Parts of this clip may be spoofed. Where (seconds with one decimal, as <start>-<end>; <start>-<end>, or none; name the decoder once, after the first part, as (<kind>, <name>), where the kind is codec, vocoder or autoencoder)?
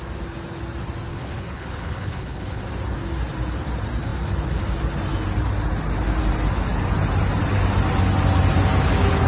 1.1-2.6 (codec, HILCodec)